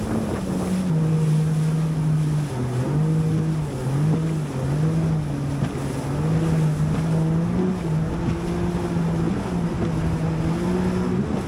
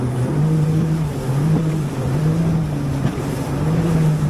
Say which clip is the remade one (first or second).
second